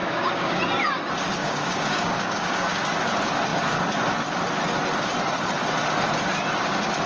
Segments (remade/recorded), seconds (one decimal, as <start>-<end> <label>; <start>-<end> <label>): 0.0-0.6 remade; 0.6-1.4 recorded; 1.4-2.8 remade; 2.8-7.1 recorded